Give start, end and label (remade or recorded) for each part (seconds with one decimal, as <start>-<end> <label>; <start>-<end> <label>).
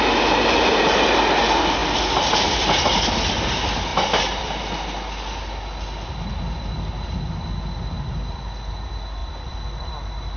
0.0-3.9 recorded; 3.9-4.6 remade; 4.6-9.2 recorded; 9.2-9.9 remade; 9.9-10.4 recorded